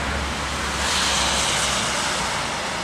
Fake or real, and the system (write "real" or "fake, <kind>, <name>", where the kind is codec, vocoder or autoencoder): real